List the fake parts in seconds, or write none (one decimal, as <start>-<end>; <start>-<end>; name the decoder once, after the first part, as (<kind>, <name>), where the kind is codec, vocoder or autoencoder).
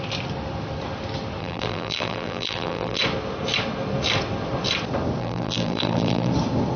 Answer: 1.4-3.0 (vocoder, BigVGAN v2); 5.2-6.3